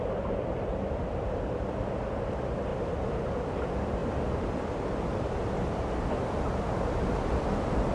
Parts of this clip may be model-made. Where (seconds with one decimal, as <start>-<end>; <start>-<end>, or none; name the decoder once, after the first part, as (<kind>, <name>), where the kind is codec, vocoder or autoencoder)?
4.0-4.7 (vocoder, BigVGAN v2)